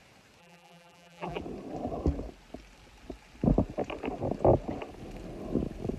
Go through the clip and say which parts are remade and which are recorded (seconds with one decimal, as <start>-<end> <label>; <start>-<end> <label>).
0.0-0.4 recorded; 0.4-1.4 remade; 1.4-6.0 recorded